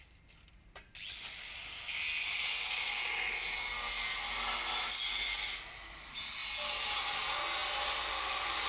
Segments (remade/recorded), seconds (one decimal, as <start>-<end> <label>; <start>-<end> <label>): 0.0-8.7 recorded